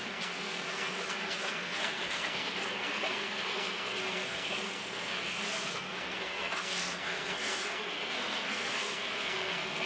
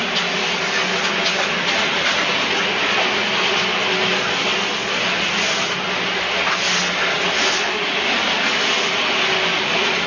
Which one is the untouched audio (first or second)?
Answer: second